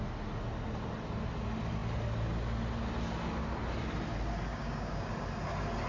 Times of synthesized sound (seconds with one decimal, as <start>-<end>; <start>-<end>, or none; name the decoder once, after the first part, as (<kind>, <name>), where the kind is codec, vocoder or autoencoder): 4.5-5.1 (codec, DAC)